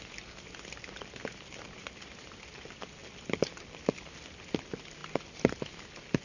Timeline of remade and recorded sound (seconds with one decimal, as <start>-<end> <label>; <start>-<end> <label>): 0.0-6.2 recorded